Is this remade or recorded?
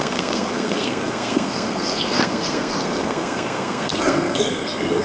remade